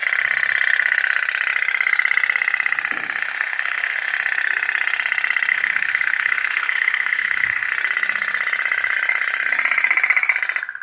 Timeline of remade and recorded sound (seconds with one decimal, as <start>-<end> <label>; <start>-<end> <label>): 0.0-3.2 recorded; 3.2-4.1 remade; 4.1-5.5 recorded; 5.5-7.7 remade; 7.7-10.8 recorded